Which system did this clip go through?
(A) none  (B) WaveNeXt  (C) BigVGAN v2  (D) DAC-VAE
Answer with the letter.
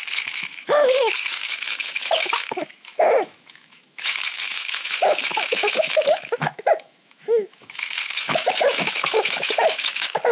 D